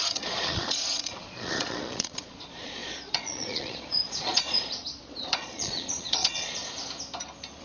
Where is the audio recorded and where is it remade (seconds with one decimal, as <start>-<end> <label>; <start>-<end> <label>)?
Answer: 0.0-6.6 remade; 6.6-7.6 recorded

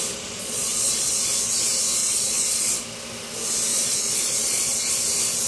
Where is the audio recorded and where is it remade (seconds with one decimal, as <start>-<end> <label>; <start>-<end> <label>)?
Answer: 0.0-0.4 recorded; 0.4-1.3 remade; 1.3-2.0 recorded; 2.0-2.7 remade; 2.7-3.7 recorded; 3.7-4.9 remade; 4.9-5.5 recorded